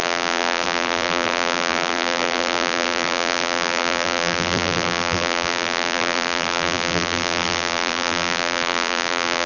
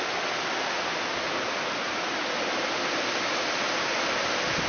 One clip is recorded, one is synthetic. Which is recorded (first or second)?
second